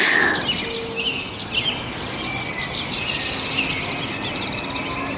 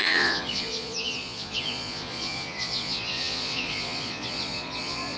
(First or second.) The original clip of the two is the first